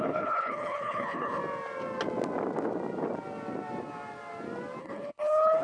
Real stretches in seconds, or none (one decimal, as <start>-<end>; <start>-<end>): 1.4-4.8